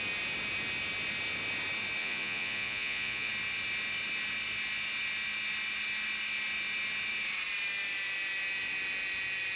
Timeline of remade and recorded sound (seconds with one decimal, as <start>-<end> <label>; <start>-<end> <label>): 0.0-2.0 recorded; 2.0-3.3 remade; 3.3-9.6 recorded